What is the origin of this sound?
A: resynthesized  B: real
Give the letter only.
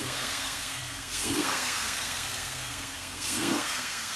A